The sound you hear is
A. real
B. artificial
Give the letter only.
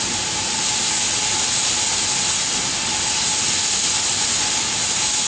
A